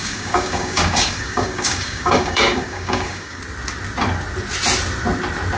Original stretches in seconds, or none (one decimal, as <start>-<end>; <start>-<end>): 3.4-5.6